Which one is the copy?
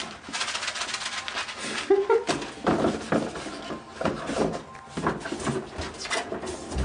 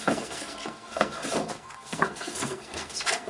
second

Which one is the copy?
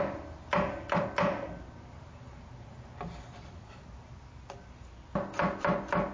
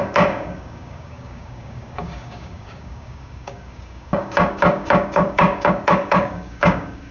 second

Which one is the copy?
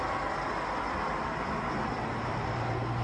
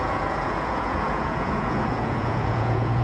second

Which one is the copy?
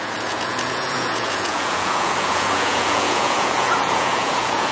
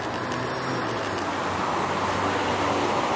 first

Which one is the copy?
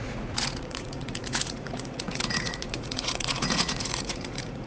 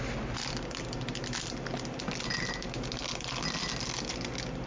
first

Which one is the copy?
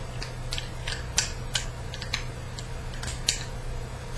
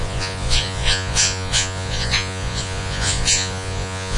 second